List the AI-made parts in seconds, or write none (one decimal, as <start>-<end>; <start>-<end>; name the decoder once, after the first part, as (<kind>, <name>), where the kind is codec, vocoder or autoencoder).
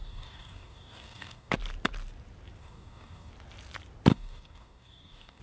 0.0-1.5 (codec, DAC); 2.6-3.3; 4.1-5.4